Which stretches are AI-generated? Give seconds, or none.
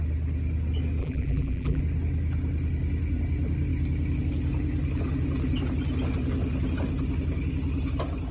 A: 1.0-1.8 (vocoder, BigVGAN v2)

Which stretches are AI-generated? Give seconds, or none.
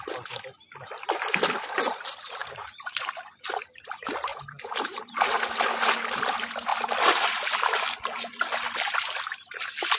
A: 2.4-3.1 (vocoder, BigVGAN v2); 4.3-5.1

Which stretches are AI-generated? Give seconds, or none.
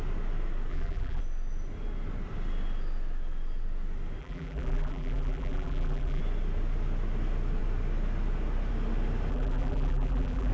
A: 0.7-1.2 (vocoder, BigVGAN v2); 4.2-6.2; 9.3-10.5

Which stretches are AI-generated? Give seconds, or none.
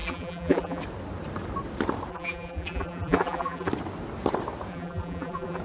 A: 0.0-0.8 (vocoder, BigVGAN v2); 2.1-3.7; 4.7-5.6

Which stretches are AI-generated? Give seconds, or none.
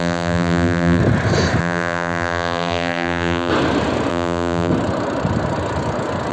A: 0.0-1.0 (vocoder, BigVGAN v2); 1.6-3.5; 4.1-4.7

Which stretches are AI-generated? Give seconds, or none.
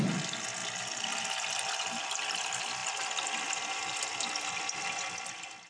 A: 0.6-1.2 (vocoder, BigVGAN v2)